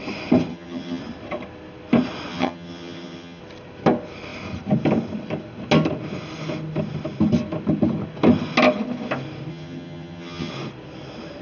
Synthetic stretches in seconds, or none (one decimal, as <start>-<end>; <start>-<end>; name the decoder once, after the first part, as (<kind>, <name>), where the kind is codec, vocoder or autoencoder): 0.5-1.0 (vocoder, HiFi-GAN); 2.3-3.4; 9.5-10.5